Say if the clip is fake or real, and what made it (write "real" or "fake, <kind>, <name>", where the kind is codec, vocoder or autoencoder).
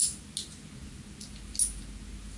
real